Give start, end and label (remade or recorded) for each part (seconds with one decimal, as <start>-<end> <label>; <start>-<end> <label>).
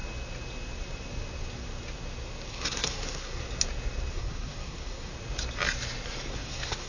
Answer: 0.0-2.5 recorded; 2.5-3.4 remade; 3.4-4.1 recorded; 4.1-5.1 remade; 5.1-6.3 recorded; 6.3-6.9 remade